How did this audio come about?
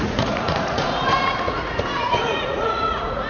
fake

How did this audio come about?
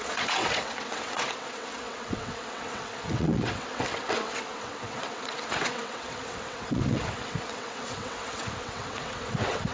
fake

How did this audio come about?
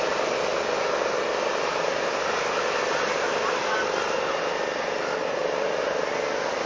real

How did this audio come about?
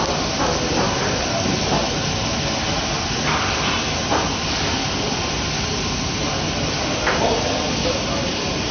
real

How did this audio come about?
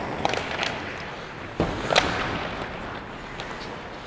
real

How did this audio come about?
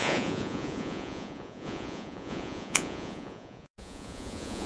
fake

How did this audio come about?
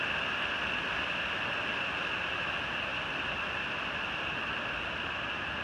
real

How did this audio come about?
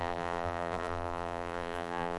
fake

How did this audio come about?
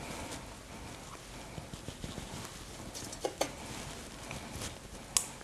real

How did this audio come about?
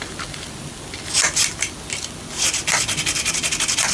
real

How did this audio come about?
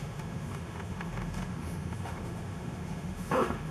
fake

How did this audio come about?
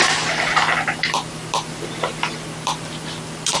real